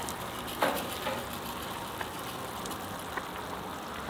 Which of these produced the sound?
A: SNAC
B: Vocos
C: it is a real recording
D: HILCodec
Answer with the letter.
C